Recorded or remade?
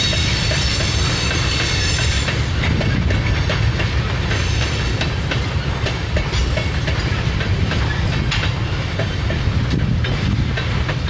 recorded